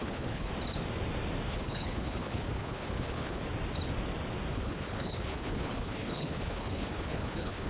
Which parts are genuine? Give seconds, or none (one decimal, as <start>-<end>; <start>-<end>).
0.5-1.5; 3.4-4.5